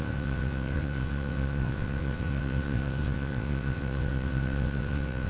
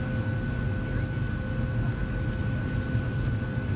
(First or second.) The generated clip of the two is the first